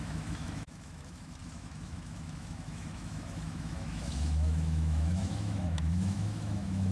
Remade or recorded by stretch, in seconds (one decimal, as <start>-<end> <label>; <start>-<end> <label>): 0.0-6.9 remade